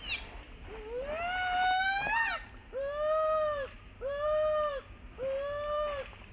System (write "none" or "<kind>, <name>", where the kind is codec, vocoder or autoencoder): none